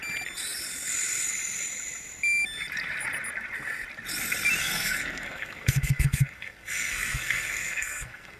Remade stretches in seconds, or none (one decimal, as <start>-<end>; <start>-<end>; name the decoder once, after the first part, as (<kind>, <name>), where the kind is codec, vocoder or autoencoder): 4.6-8.4 (codec, SNAC)